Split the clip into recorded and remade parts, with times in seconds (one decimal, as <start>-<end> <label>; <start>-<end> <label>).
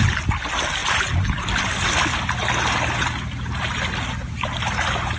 0.0-5.2 recorded